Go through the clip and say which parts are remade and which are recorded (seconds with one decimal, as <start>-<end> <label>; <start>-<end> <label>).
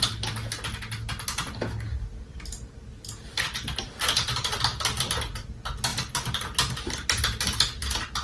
0.0-2.9 recorded; 2.9-4.6 remade; 4.6-8.2 recorded